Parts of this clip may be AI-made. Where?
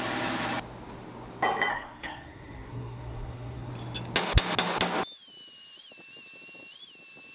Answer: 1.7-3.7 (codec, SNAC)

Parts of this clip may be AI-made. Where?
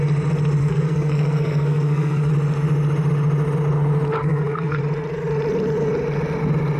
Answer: 0.6-2.3 (codec, SNAC); 4.2-4.8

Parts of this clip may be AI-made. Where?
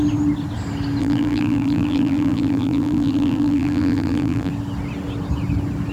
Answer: 1.0-4.5 (vocoder, BigVGAN v2)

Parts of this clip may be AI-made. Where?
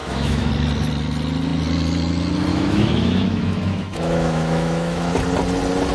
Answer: 0.0-0.5 (autoencoder, DAC-VAE); 2.5-5.1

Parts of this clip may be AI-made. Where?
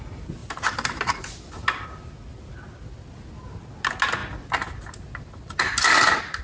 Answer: none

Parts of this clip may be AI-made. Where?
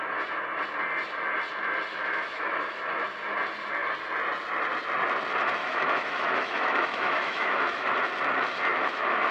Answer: 1.9-2.8 (autoencoder, DAC-VAE); 5.6-7.9; 8.7-9.3